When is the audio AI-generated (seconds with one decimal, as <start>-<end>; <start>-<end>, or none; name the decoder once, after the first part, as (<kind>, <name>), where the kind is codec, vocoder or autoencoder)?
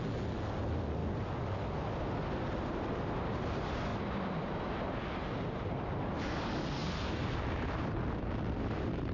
none